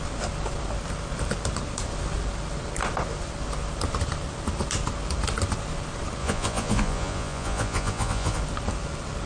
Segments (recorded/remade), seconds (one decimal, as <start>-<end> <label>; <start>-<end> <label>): 0.0-6.2 recorded; 6.2-8.4 remade; 8.4-9.3 recorded